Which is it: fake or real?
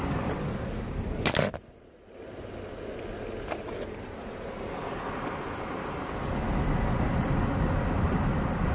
real